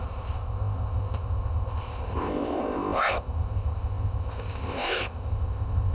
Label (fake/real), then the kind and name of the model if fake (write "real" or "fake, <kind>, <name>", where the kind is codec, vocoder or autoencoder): fake, codec, ZipCodec